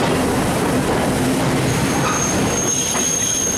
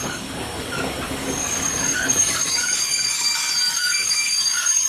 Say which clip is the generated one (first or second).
second